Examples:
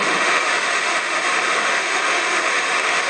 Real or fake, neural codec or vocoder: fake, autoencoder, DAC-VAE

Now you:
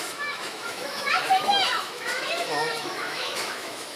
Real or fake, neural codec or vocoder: fake, autoencoder, DAC-VAE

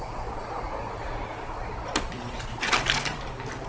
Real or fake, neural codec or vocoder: real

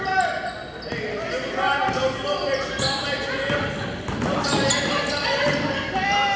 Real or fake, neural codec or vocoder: real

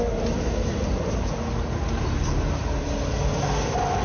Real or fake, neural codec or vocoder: real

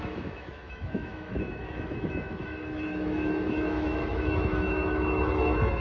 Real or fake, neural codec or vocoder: fake, autoencoder, DAC-VAE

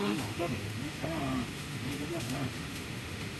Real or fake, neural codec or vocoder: fake, autoencoder, DAC-VAE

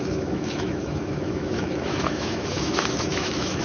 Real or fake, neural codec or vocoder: fake, autoencoder, DAC-VAE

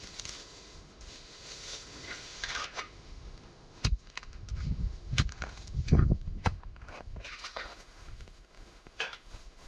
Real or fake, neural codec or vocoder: fake, autoencoder, DAC-VAE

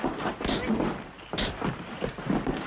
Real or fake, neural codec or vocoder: real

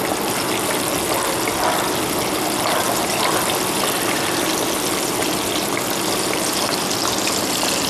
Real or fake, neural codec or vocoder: real